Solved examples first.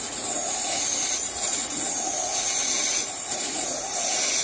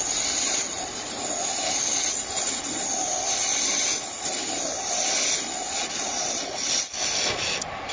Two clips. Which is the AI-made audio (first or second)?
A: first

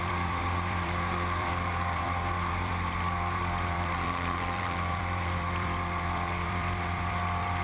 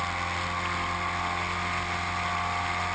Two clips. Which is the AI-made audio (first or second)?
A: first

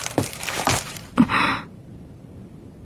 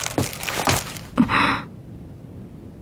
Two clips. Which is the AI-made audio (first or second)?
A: first